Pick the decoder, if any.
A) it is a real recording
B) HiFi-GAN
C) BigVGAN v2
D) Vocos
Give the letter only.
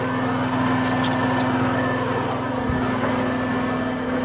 A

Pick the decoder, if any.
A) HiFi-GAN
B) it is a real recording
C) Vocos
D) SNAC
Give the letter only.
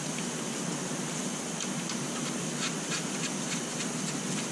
B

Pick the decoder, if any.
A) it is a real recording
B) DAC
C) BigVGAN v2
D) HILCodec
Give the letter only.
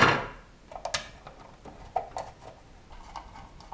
A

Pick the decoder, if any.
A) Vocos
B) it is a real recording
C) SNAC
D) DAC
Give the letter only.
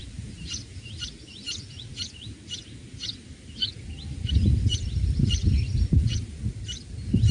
B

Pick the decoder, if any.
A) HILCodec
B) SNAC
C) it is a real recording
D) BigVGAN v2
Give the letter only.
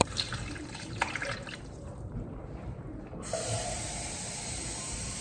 D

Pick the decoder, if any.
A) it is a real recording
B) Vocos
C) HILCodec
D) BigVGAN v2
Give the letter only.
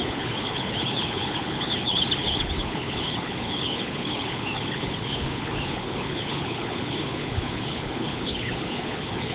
C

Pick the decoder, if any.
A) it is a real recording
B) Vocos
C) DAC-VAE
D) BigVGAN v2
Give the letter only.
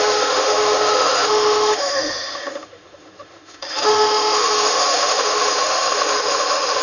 C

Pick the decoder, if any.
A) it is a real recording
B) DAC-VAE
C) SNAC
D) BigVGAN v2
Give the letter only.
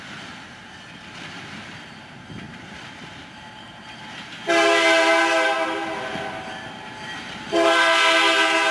D